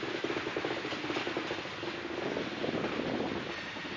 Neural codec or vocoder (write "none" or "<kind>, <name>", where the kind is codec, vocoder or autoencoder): none